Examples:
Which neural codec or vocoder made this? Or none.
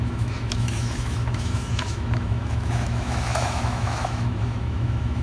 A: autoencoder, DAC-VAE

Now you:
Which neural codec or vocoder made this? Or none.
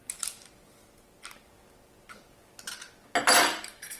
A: none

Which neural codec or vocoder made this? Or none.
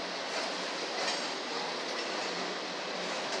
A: none